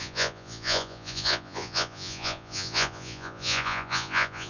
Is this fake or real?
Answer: fake